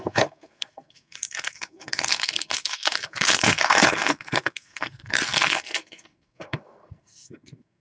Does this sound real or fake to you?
fake